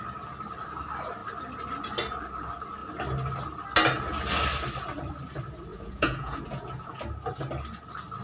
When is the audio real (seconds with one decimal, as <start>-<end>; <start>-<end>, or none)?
0.0-5.7; 7.0-8.2